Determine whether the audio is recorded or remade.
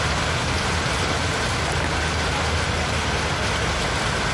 recorded